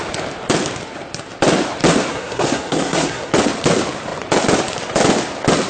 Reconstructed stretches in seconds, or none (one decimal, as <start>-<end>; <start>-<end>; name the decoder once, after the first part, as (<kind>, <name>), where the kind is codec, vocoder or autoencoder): 2.1-3.3 (codec, SNAC)